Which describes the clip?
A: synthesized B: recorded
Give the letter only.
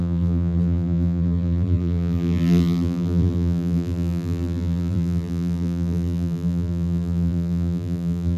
A